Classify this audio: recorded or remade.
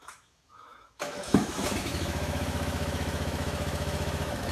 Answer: remade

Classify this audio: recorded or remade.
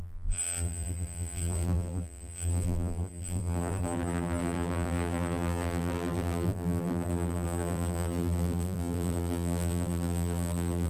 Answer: remade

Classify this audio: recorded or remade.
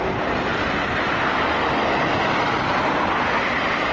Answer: recorded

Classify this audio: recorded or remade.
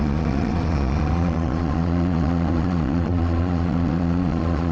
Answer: remade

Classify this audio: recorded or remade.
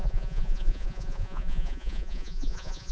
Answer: remade